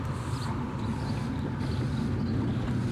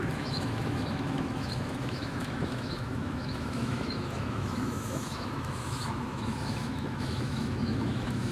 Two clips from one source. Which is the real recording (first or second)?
first